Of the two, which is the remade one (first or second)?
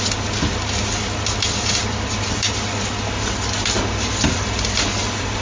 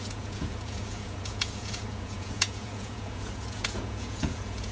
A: second